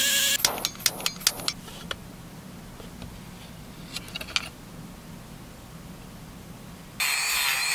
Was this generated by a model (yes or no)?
no